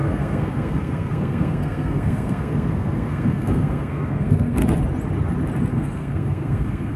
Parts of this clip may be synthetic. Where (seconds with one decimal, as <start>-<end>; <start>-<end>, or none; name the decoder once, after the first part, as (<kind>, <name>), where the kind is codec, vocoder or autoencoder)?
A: 0.0-4.6 (codec, SNAC); 5.7-7.0